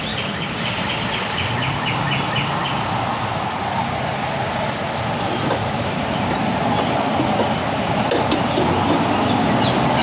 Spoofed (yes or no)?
no